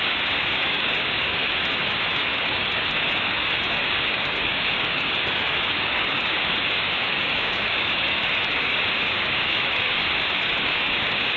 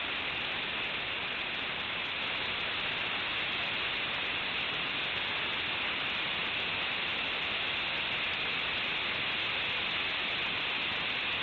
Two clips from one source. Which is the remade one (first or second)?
first